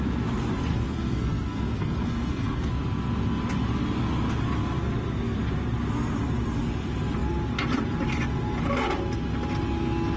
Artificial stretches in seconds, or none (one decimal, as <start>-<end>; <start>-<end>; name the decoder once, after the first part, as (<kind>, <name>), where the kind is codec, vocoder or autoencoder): 0.7-2.7 (codec, SNAC)